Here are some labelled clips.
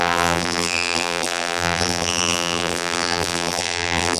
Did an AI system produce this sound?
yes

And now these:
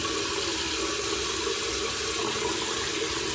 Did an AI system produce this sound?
no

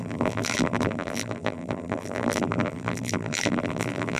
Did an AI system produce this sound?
yes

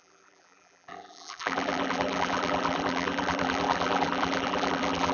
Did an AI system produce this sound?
yes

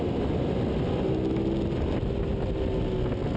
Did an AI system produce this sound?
no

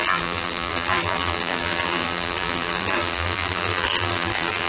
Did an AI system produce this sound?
yes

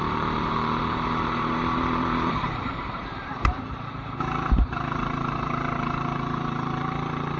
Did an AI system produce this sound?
yes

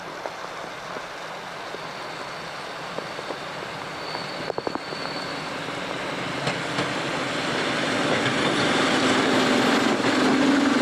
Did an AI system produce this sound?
no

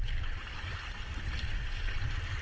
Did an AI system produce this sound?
no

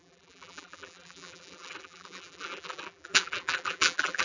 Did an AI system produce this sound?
yes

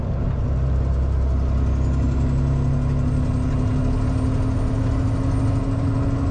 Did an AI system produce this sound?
no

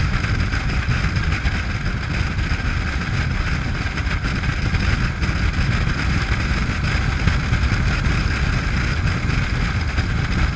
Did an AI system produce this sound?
no